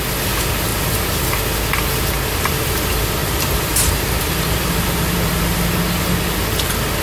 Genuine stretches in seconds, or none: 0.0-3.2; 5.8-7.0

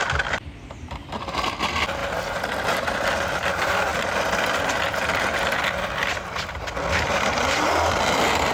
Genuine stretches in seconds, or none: 0.0-8.5

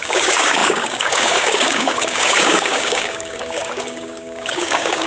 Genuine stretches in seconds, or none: none